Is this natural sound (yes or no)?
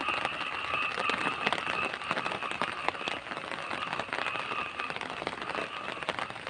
yes